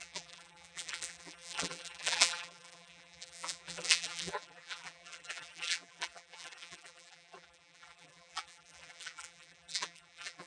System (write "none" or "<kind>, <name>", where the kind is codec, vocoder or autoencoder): vocoder, BigVGAN v2